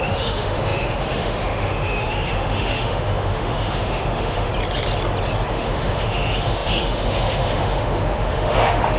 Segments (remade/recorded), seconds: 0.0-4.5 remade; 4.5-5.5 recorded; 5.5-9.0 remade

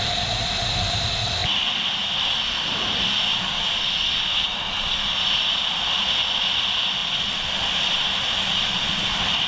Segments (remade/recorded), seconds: 0.0-9.5 recorded

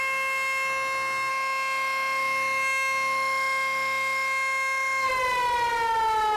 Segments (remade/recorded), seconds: 0.0-1.3 recorded; 1.3-5.1 remade; 5.1-6.4 recorded

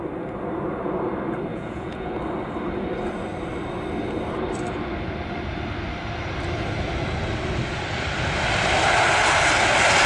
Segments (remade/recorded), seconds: 0.0-1.5 recorded; 1.5-2.1 remade; 2.1-10.1 recorded